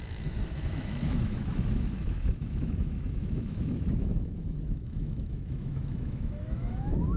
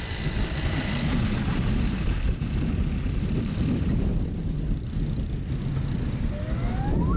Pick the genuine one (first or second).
second